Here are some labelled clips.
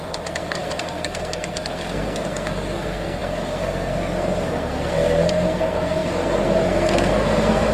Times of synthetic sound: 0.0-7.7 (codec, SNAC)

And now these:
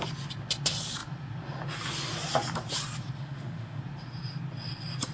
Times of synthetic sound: 3.2-3.8 (autoencoder, DAC-VAE)

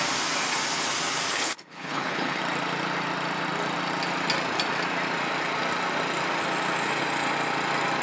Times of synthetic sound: 1.3-2.4 (codec, HILCodec)

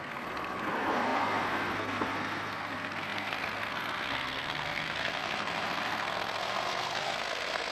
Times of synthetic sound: 0.0-7.7 (codec, SNAC)

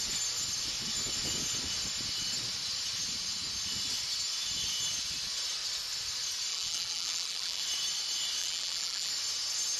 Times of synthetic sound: 6.5-7.6 (vocoder, BigVGAN v2); 8.4-9.1

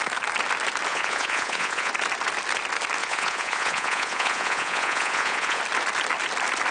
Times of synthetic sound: 0.9-1.9 (vocoder, Vocos); 3.0-5.6